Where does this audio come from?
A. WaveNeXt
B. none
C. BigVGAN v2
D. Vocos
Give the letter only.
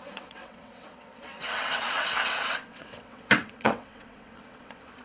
A